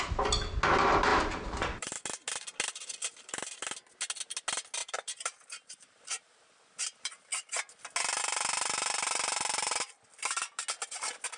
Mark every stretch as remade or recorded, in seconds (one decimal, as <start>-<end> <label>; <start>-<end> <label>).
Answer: 0.0-1.1 recorded; 1.1-1.9 remade; 1.9-4.8 recorded; 4.8-6.4 remade; 6.4-11.4 recorded